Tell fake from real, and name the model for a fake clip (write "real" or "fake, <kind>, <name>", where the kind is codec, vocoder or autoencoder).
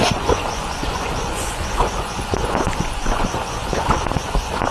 fake, vocoder, Vocos